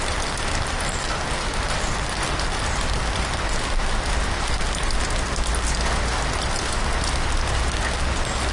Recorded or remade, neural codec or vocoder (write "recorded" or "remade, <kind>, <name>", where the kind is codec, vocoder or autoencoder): recorded